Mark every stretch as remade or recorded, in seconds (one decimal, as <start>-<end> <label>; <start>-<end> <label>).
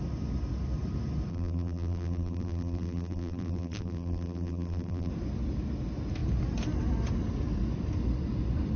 0.0-1.3 recorded; 1.3-5.1 remade; 5.1-8.8 recorded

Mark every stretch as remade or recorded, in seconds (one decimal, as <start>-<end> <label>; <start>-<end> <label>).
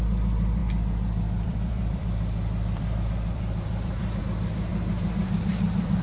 0.0-6.0 remade